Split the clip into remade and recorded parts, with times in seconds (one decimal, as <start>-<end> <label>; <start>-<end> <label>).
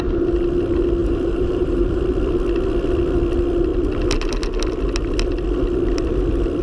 0.0-1.0 recorded; 1.0-2.0 remade; 2.0-6.6 recorded